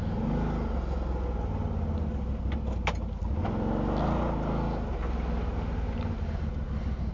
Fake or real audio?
real